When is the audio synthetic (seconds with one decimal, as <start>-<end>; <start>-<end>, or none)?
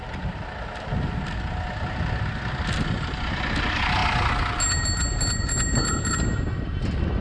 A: none